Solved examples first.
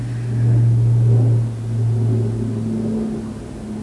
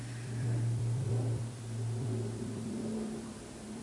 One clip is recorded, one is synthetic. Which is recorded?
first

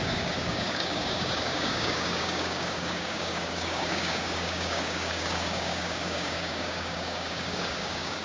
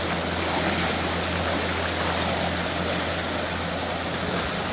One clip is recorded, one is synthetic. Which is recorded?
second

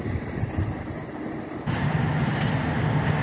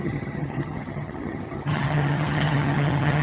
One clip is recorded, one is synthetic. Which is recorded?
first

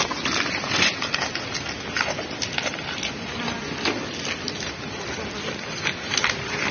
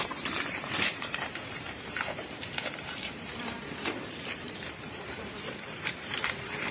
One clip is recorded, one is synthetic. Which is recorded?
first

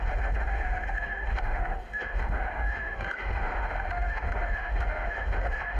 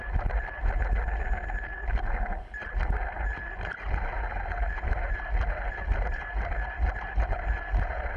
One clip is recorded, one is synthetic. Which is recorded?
second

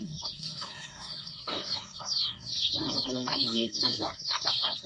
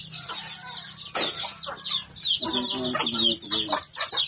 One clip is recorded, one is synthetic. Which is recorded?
second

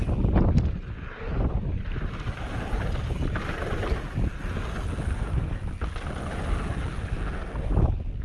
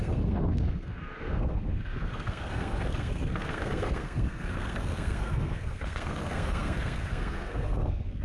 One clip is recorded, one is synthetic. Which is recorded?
first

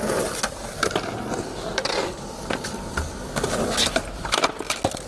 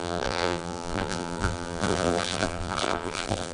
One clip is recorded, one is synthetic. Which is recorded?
first